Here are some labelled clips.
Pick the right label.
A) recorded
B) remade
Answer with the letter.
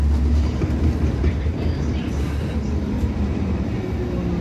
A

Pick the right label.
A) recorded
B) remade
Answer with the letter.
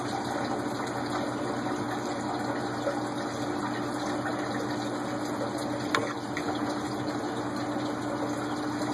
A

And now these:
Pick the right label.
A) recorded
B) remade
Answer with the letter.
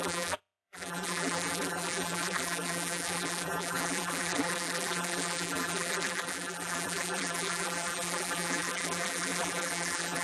B